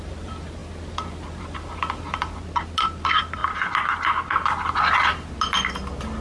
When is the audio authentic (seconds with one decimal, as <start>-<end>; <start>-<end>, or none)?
0.0-6.2